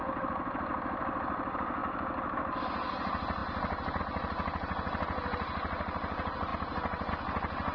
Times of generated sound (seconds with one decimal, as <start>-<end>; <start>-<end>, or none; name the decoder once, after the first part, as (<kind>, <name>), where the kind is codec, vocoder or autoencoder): none